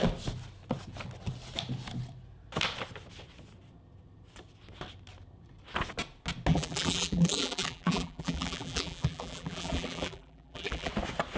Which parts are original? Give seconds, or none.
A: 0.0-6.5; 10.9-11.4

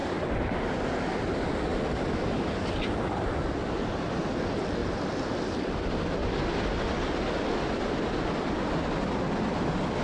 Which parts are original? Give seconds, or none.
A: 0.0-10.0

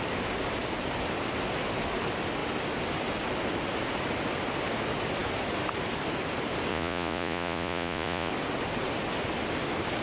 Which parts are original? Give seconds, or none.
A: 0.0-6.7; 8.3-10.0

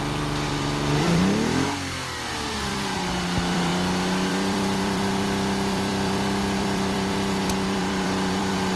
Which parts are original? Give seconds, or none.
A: 2.0-2.5; 3.7-4.3

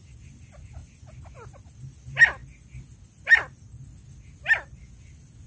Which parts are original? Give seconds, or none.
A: 0.0-5.5

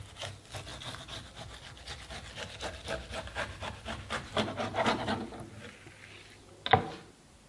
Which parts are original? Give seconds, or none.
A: 0.0-7.5

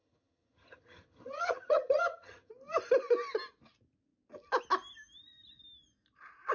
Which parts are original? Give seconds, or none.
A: 2.5-6.5

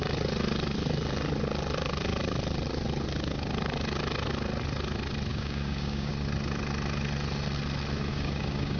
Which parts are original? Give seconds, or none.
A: 0.0-5.3; 6.1-8.1